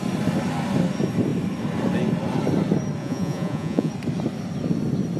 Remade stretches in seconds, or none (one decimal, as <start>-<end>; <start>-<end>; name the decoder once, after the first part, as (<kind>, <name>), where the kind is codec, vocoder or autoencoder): 3.0-3.9 (vocoder, Vocos)

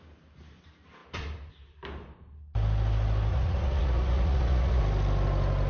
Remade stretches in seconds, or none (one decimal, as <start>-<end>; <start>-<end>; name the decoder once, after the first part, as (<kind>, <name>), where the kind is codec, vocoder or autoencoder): 3.3-4.8 (vocoder, Vocos)

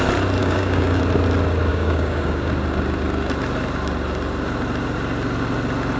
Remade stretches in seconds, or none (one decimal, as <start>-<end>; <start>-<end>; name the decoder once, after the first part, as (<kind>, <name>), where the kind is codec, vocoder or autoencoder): 0.4-1.0 (codec, DAC); 1.7-2.5

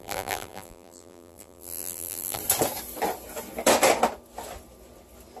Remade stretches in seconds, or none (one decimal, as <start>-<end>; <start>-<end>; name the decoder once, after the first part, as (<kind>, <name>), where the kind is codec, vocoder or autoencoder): 0.0-2.4 (vocoder, BigVGAN v2)

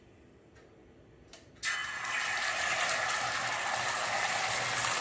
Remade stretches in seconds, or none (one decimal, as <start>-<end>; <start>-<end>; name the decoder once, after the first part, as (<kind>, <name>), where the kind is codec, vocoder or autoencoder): none

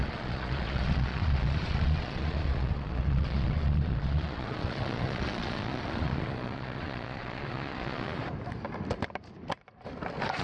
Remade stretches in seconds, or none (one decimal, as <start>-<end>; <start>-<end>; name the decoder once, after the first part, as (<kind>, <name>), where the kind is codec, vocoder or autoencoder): 0.0-8.2 (vocoder, Vocos)